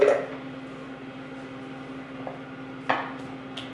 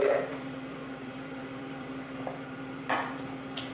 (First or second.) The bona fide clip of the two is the first